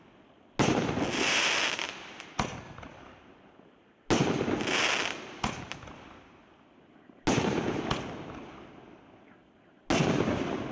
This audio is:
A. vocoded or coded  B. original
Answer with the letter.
B